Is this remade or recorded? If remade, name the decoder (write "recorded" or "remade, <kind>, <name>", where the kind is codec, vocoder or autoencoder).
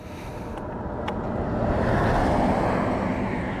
recorded